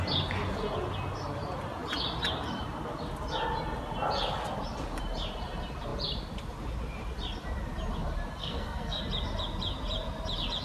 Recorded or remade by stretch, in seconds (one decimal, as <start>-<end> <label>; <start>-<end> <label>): 0.0-8.4 recorded; 8.4-9.0 remade; 9.0-10.6 recorded